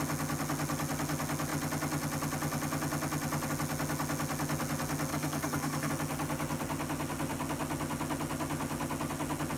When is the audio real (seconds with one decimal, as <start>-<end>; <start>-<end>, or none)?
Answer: 0.0-5.1; 5.9-9.6